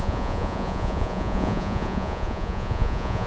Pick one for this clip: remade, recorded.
remade